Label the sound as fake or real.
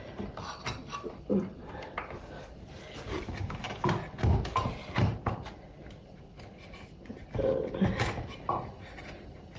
real